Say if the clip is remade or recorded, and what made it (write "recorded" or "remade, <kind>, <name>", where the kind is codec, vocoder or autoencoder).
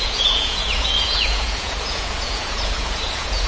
remade, vocoder, Vocos